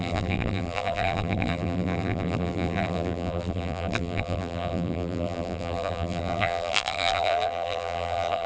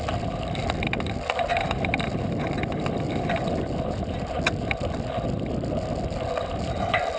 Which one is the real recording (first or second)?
second